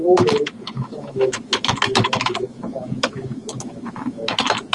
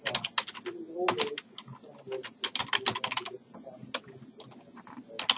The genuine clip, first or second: second